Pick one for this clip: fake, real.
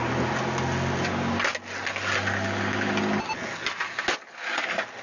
real